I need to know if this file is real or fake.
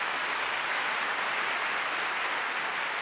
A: real